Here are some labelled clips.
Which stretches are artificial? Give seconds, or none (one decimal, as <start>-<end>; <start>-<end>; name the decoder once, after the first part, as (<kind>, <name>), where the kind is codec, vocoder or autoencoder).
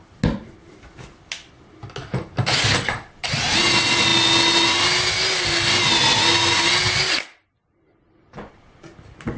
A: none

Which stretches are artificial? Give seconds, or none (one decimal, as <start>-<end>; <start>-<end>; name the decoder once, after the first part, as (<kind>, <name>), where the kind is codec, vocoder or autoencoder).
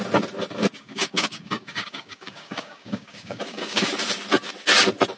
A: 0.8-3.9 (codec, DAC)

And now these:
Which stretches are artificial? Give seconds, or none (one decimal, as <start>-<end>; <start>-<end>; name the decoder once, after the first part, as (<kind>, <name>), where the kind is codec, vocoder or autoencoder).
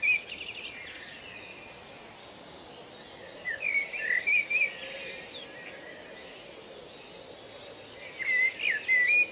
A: 2.2-2.7 (codec, DAC)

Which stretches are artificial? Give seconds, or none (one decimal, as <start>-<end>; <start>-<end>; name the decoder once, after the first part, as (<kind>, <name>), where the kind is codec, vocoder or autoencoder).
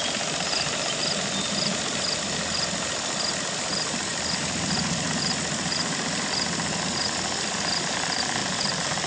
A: none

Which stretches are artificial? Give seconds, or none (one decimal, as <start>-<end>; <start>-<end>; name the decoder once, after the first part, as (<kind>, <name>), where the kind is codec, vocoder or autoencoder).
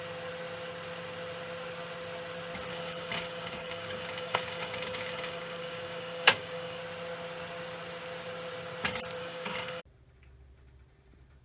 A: 2.7-6.8 (codec, DAC); 9.2-9.8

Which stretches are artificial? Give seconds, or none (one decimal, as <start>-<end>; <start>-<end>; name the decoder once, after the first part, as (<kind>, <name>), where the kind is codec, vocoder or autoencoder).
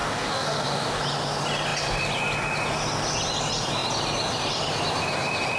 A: 0.0-1.0 (codec, DAC)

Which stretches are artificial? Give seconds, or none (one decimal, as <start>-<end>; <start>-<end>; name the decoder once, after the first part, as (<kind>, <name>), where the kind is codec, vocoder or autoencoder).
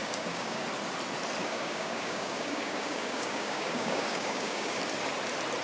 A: 0.0-0.6 (codec, DAC); 1.4-4.8